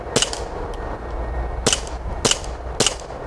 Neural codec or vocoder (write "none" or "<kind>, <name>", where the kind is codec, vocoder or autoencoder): none